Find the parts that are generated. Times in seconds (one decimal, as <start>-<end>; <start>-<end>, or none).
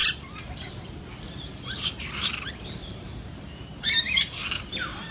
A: 0.0-5.1